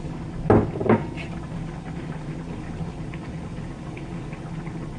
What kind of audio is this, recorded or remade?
recorded